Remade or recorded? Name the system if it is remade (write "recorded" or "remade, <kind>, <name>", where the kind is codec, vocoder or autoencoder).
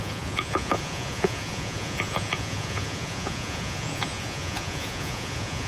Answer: remade, vocoder, Vocos